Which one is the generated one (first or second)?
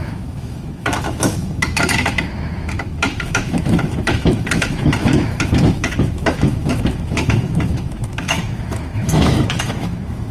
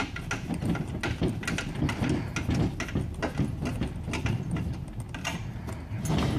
first